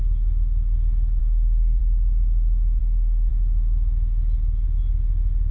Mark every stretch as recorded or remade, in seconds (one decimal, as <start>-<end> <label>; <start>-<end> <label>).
0.0-1.2 recorded; 1.2-1.8 remade; 1.8-2.8 recorded; 2.8-3.3 remade; 3.3-5.5 recorded